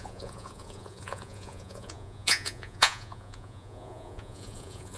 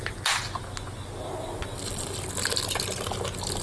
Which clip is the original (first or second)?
second